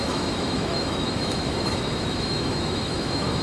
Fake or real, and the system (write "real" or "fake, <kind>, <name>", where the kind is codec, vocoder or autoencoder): fake, autoencoder, DAC-VAE